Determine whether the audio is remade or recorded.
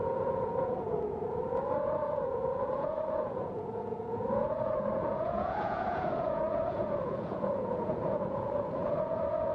remade